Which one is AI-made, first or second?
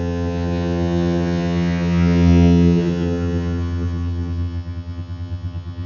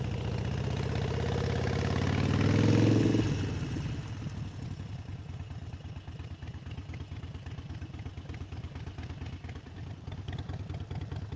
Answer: first